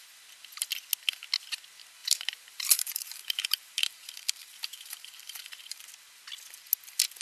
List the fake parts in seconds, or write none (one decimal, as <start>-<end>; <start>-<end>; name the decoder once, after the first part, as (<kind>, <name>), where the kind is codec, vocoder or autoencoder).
2.0-5.8 (vocoder, BigVGAN v2)